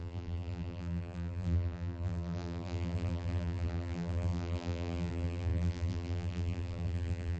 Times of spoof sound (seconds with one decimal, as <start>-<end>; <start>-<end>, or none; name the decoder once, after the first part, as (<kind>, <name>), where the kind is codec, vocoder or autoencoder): 0.0-7.4 (vocoder, BigVGAN v2)